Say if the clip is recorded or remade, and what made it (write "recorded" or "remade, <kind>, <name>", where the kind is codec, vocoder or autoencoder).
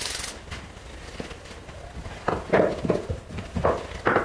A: recorded